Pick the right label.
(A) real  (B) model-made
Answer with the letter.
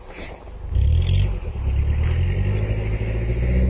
A